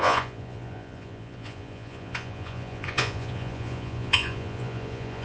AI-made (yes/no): yes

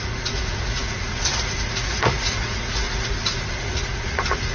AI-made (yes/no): yes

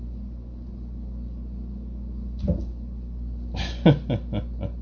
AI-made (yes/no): no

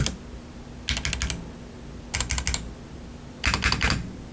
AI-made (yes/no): no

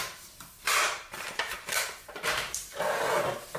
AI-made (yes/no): yes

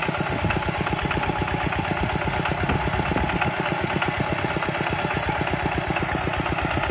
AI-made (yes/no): no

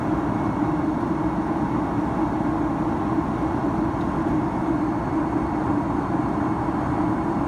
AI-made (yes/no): no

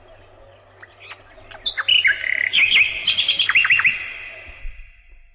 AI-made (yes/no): no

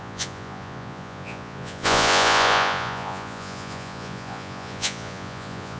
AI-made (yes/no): yes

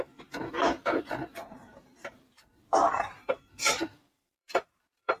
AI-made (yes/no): yes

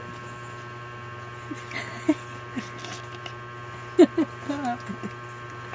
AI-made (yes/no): no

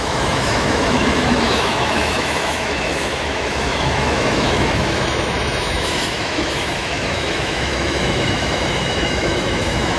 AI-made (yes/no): yes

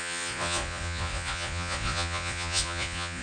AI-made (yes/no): yes